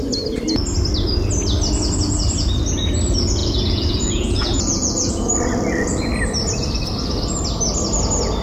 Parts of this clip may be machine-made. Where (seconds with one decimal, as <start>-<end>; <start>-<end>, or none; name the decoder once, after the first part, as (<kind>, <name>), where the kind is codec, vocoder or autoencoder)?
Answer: 3.4-5.1 (vocoder, Vocos)